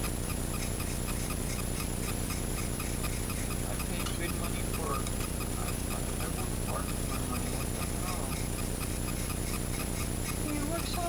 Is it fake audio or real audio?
real